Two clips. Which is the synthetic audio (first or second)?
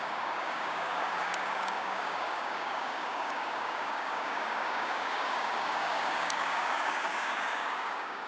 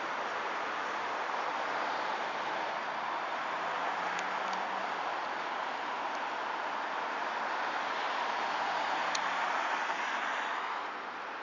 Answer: first